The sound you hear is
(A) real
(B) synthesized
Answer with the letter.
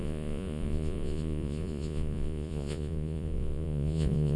B